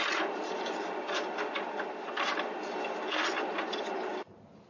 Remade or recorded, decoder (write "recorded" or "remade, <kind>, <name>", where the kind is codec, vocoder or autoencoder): recorded